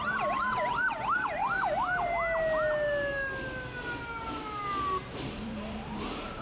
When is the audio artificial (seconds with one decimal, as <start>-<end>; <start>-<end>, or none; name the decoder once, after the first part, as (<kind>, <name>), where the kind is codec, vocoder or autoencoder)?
0.0-1.4 (vocoder, BigVGAN v2); 5.2-6.4